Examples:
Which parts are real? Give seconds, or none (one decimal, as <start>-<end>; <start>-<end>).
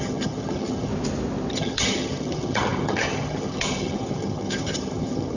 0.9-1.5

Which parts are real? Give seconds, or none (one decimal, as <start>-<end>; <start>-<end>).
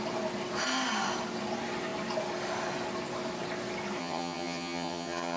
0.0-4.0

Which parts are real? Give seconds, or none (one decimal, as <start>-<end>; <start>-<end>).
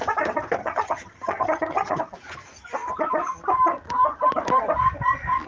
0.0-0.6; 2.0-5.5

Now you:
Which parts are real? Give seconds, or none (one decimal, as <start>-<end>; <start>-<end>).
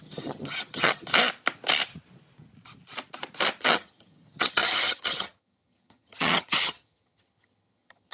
1.1-3.6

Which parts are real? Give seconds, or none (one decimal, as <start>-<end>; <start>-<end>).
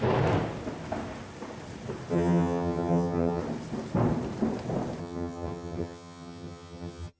0.0-2.1; 3.4-5.0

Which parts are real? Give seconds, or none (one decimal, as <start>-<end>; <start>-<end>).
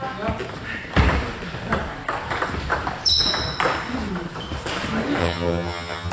0.0-5.2